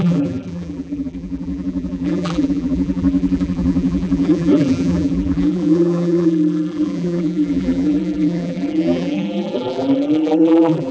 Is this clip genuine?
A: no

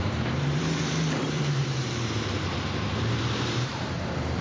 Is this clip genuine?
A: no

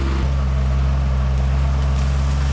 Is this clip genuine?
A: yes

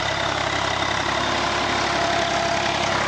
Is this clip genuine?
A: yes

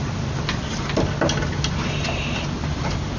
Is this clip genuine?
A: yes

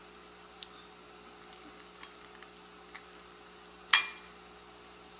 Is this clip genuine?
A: yes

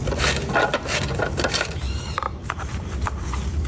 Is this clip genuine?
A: no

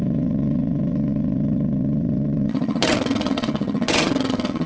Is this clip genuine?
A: no